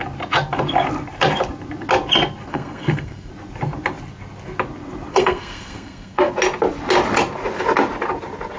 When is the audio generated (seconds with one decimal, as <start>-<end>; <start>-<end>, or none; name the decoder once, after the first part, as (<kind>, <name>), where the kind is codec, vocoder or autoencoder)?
2.5-3.3 (codec, SNAC); 5.1-6.3